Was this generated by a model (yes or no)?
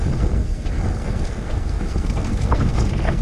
yes